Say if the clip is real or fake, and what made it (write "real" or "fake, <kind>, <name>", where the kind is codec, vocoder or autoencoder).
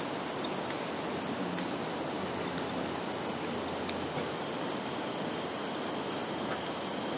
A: real